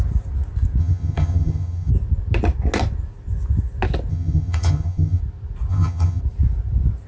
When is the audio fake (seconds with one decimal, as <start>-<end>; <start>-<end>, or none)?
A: 0.8-1.9; 4.1-5.2; 5.7-6.2